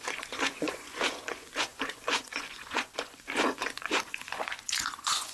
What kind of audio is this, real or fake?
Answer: fake